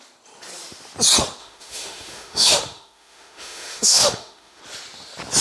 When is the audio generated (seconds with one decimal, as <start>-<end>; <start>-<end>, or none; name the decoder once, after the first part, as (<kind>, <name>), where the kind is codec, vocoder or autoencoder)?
1.4-4.6 (autoencoder, DAC-VAE)